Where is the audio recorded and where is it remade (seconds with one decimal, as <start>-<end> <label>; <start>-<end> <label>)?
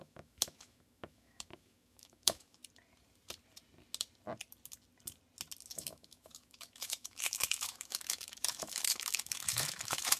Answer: 0.0-2.6 remade; 2.6-5.7 recorded; 5.7-10.2 remade